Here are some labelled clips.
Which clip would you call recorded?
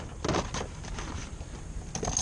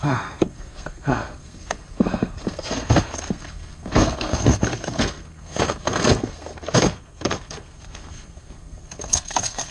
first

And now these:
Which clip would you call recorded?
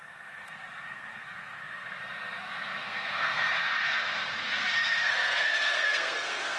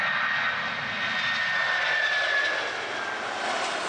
second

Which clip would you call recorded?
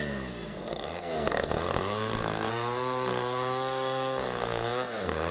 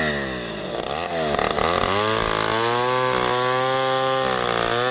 second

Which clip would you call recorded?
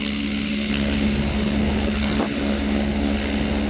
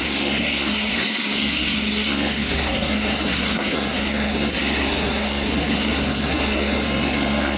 first